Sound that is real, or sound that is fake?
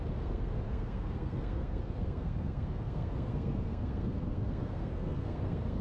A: fake